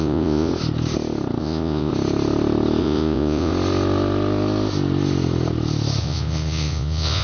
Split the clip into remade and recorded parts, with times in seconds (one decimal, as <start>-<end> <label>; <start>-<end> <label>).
0.0-0.5 remade; 0.5-1.4 recorded; 1.4-1.9 remade; 1.9-2.8 recorded; 2.8-3.5 remade; 3.5-6.0 recorded; 6.0-7.2 remade